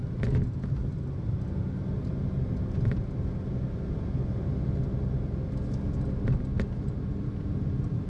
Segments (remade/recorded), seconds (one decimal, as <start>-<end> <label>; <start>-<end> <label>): 0.0-8.1 recorded